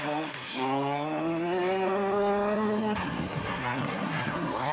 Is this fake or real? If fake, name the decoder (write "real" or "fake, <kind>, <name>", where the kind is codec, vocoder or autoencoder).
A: fake, codec, SNAC